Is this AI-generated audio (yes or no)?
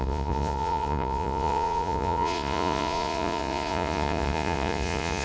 yes